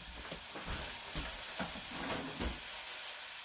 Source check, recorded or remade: recorded